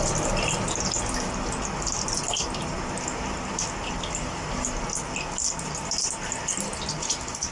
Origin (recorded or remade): recorded